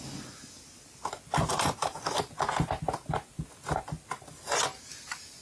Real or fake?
real